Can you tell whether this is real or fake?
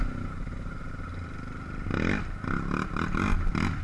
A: real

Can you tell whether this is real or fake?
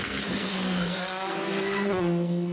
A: fake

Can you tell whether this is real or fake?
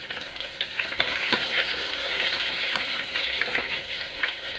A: fake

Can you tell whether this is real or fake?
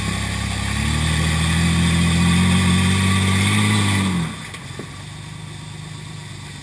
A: real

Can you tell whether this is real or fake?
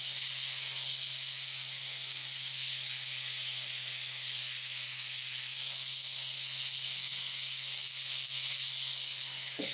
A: fake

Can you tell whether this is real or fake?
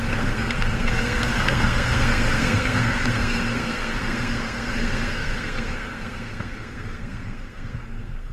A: fake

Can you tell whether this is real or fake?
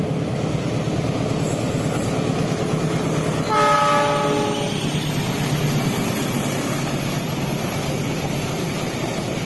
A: real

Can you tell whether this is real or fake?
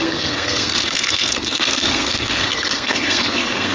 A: fake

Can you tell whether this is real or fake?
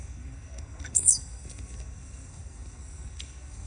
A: fake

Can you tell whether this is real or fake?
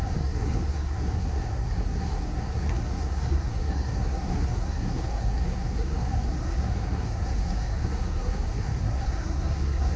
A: fake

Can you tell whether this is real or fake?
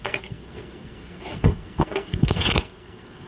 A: fake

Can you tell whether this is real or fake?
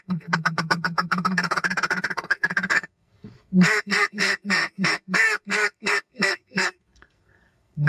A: fake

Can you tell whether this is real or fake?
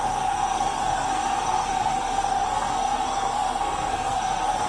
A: fake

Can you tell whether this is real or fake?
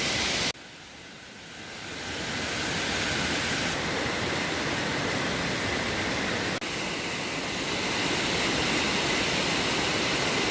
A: real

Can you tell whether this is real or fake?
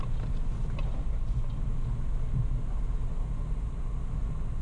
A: real